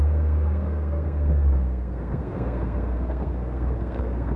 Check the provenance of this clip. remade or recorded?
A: remade